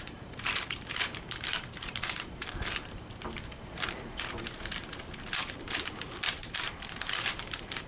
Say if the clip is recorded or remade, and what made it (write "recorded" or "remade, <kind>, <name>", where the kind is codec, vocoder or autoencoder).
remade, vocoder, BigVGAN v2